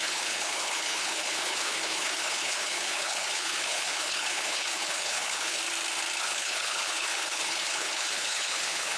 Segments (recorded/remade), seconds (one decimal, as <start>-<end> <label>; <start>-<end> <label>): 0.0-5.6 remade; 5.6-6.2 recorded; 6.2-9.0 remade